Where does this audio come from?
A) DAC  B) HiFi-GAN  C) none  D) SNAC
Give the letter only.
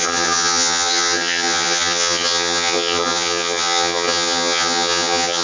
B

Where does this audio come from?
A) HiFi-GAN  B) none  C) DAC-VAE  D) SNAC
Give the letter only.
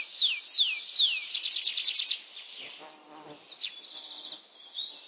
B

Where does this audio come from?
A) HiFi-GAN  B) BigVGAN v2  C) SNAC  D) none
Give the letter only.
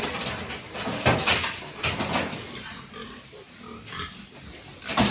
D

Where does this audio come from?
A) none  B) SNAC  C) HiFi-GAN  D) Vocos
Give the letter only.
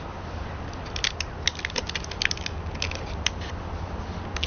A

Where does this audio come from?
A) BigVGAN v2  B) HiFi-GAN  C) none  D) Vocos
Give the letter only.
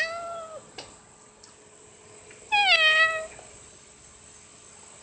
C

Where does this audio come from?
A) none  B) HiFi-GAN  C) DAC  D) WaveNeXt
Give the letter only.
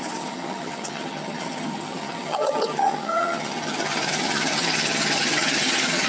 B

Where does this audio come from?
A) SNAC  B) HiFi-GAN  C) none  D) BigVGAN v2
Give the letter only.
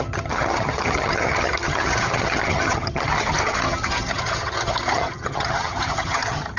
B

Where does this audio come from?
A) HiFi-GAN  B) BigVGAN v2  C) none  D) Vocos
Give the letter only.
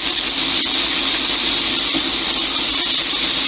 C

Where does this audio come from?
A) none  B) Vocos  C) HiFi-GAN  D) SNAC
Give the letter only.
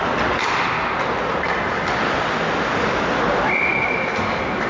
A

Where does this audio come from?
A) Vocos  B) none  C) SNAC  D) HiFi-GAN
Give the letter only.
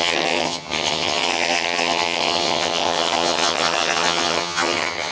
D